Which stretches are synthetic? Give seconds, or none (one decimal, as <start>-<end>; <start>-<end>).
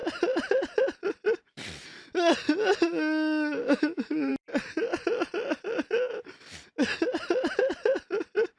3.6-4.3